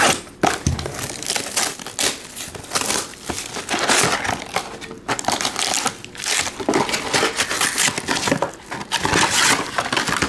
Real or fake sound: real